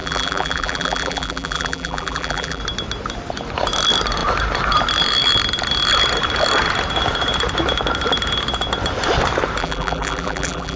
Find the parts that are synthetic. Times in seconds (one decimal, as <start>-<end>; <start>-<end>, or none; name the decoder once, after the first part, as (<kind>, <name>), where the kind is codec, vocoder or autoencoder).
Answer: 0.0-2.6 (vocoder, BigVGAN v2); 9.6-10.8